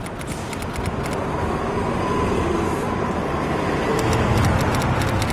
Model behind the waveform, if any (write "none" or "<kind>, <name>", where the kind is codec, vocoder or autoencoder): none